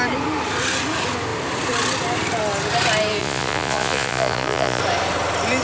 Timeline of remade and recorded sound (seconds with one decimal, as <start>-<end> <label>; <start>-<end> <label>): 0.0-3.2 recorded; 3.2-4.8 remade; 4.8-5.6 recorded